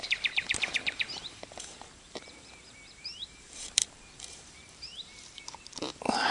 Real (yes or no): no